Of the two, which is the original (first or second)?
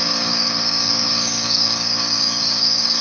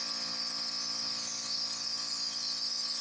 second